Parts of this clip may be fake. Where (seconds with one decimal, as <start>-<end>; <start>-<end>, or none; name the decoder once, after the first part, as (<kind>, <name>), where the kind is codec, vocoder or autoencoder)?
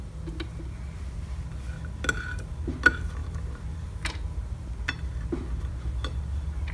none